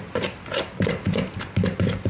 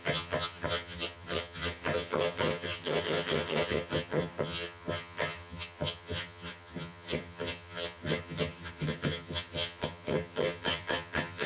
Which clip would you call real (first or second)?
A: first